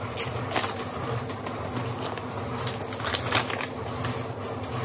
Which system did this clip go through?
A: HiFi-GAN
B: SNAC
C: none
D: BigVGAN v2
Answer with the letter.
C